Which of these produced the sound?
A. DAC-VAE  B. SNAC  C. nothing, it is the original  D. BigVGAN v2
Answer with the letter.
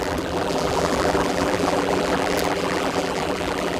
D